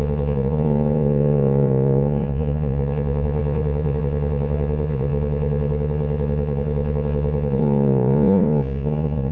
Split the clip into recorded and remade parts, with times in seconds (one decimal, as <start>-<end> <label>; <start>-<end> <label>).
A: 0.0-9.3 remade